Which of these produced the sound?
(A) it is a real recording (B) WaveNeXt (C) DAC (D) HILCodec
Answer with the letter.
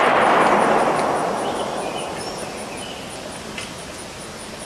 A